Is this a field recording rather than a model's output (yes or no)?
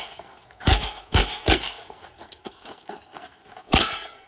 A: no